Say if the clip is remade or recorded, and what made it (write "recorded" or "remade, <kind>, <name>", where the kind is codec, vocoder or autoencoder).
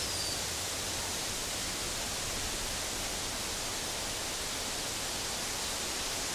recorded